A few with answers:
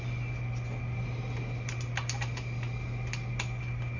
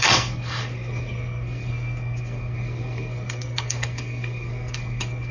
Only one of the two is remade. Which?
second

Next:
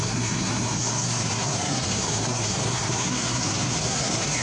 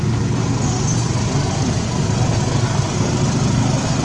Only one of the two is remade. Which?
first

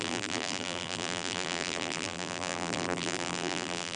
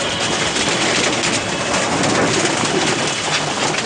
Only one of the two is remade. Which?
first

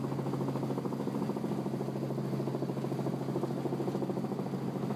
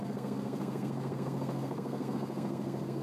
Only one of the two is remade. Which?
second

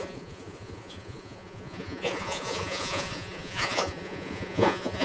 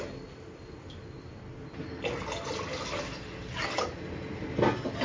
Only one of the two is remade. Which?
first